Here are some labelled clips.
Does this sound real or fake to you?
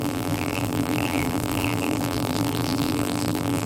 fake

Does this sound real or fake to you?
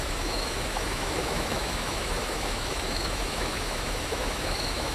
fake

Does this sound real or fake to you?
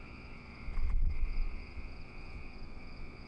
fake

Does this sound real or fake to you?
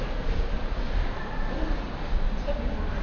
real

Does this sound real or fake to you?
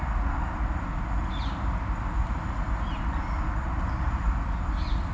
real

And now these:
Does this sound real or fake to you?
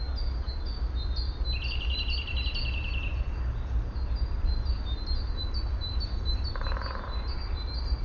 real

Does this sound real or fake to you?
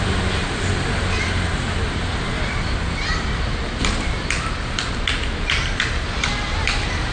real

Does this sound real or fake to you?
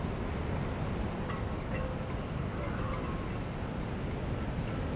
real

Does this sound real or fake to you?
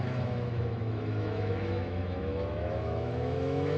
fake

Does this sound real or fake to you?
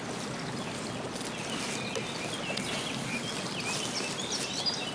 real